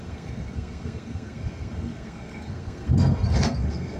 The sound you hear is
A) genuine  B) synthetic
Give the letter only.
B